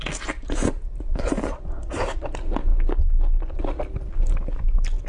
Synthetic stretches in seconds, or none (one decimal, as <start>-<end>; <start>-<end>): none